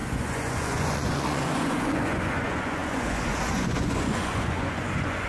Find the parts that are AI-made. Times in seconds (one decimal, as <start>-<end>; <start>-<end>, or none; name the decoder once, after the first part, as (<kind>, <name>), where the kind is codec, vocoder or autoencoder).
0.0-5.3 (vocoder, Vocos)

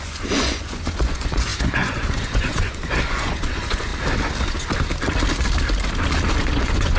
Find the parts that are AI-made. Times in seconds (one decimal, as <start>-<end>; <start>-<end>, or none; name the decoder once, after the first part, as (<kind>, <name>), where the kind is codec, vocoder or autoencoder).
0.0-3.9 (vocoder, Vocos); 6.4-7.0

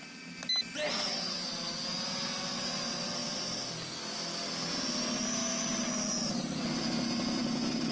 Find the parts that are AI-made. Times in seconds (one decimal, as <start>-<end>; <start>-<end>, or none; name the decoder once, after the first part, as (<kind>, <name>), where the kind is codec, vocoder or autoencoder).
3.2-4.5 (vocoder, BigVGAN v2)

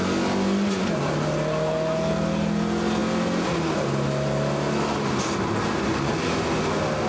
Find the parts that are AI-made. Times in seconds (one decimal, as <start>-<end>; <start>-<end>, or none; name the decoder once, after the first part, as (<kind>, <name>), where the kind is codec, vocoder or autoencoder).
none

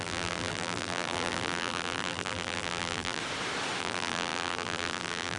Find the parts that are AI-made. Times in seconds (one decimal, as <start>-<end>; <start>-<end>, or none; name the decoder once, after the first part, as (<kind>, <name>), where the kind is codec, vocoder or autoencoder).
0.0-3.2 (vocoder, BigVGAN v2); 3.8-5.4

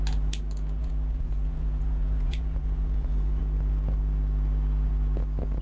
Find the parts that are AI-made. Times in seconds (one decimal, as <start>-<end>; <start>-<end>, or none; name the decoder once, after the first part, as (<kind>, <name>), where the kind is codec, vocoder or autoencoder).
0.8-3.4 (vocoder, Vocos)